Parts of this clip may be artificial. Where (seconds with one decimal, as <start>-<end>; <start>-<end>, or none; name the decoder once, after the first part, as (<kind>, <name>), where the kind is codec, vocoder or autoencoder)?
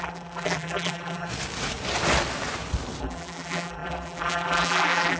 0.0-1.3 (vocoder, BigVGAN v2); 3.0-5.2